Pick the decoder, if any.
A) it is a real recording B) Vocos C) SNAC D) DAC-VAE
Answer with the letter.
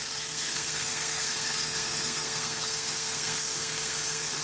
C